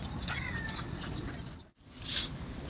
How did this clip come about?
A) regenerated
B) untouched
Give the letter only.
B